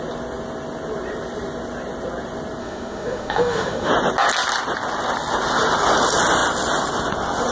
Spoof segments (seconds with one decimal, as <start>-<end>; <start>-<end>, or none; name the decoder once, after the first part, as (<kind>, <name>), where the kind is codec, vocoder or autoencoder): 2.6-3.9 (autoencoder, DAC-VAE)